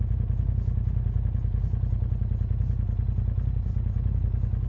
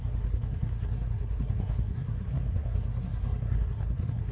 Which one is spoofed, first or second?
second